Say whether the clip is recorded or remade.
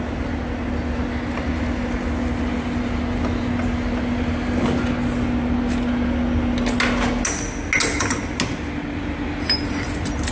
recorded